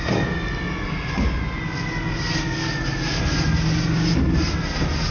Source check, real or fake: real